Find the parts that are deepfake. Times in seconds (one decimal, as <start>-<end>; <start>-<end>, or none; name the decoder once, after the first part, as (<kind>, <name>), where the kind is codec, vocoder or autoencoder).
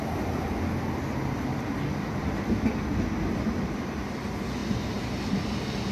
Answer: none